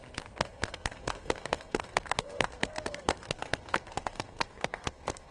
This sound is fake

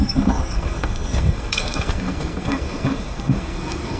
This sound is fake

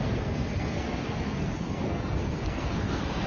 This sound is fake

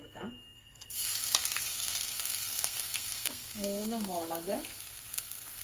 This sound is fake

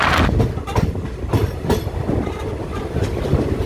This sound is real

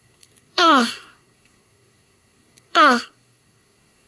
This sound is fake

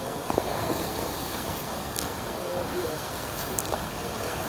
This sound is fake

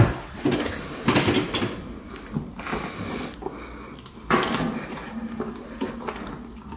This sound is real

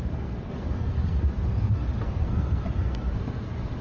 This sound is fake